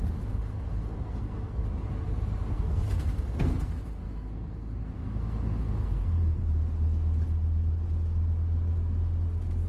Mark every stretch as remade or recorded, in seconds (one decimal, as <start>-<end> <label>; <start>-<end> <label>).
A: 0.0-1.6 remade; 1.6-2.5 recorded; 2.5-6.4 remade; 6.4-9.7 recorded